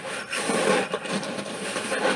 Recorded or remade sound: remade